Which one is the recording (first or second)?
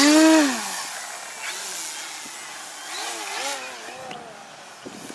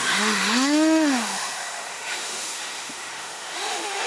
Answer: first